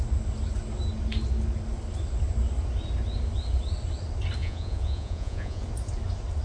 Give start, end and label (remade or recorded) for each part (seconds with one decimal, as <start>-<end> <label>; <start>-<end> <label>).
0.0-4.4 recorded; 4.4-5.6 remade; 5.6-6.4 recorded